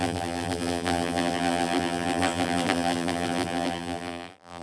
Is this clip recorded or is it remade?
remade